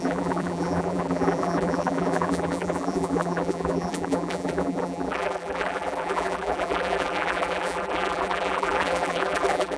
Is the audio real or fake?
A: fake